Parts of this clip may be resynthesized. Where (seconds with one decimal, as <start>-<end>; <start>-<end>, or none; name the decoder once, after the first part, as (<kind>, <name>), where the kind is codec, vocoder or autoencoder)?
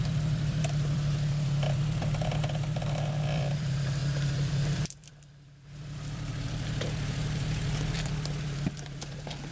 0.0-9.5 (vocoder, BigVGAN v2)